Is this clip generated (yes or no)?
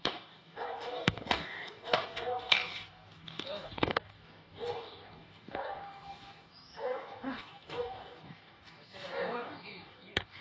yes